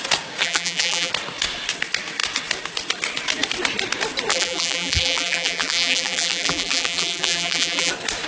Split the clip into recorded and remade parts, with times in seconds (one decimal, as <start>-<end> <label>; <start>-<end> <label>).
0.0-0.4 recorded; 0.4-1.1 remade; 1.1-4.3 recorded; 4.3-7.9 remade; 7.9-8.3 recorded